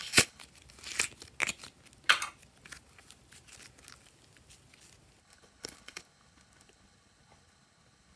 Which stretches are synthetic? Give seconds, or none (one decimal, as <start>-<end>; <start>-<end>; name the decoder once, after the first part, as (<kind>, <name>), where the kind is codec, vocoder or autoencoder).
0.0-0.4 (codec, HILCodec); 5.2-8.2